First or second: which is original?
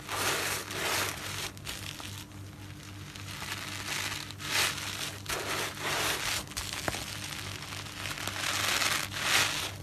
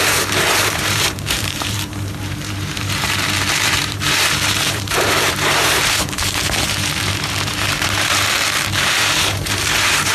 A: first